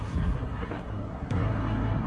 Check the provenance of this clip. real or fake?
fake